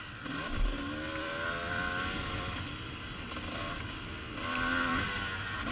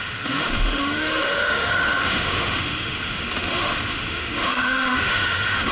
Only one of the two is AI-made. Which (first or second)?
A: second